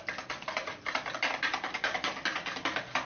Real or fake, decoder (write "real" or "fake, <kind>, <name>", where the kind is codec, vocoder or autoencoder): real